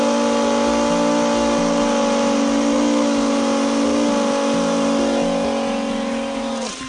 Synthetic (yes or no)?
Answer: no